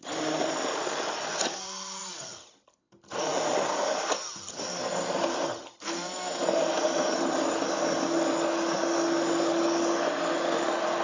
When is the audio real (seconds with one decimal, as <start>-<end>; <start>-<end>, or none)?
0.0-11.0